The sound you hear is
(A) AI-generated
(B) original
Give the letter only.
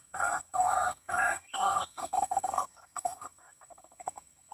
A